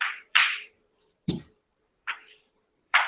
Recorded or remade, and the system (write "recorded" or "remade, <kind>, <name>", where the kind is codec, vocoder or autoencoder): remade, vocoder, BigVGAN v2